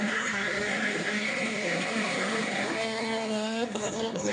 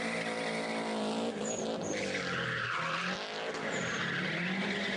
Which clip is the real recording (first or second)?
second